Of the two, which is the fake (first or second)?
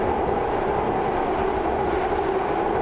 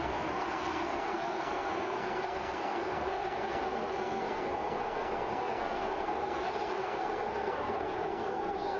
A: second